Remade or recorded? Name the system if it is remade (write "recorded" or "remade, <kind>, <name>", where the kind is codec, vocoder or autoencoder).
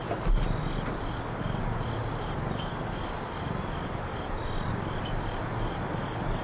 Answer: recorded